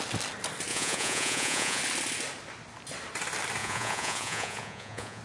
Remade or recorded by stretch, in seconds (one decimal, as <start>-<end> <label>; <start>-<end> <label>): 0.0-0.7 recorded; 0.7-1.8 remade; 1.8-3.6 recorded; 3.6-5.2 remade